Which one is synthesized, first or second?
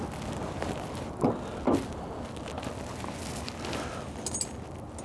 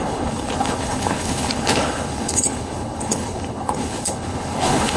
second